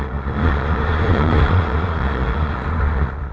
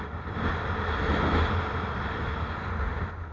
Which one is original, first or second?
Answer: second